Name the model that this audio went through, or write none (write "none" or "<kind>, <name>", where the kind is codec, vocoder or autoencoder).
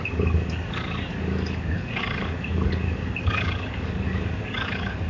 codec, DAC